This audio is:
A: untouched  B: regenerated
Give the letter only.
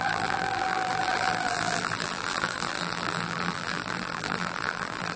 B